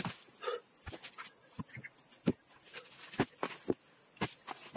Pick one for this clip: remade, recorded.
recorded